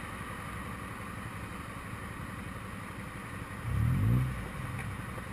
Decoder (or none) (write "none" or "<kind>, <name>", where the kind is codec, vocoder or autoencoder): none